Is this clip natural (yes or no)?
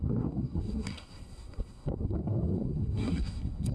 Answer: no